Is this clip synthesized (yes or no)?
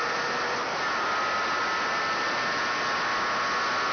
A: no